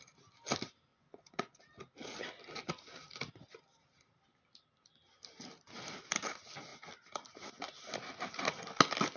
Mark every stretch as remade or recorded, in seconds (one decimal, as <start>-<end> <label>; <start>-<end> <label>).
0.0-0.9 recorded; 0.9-1.6 remade; 1.6-9.2 recorded